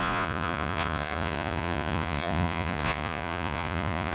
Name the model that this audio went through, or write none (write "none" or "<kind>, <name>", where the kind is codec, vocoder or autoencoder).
vocoder, Vocos